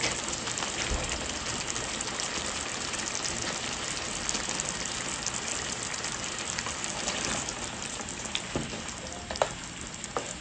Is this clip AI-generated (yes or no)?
no